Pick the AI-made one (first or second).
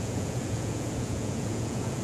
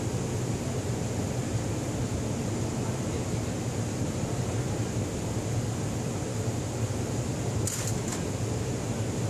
first